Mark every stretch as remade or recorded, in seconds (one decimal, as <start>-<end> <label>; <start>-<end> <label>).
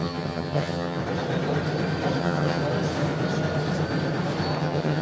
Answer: 0.0-1.0 remade; 1.0-2.2 recorded; 2.2-2.6 remade; 2.6-4.6 recorded; 4.6-5.0 remade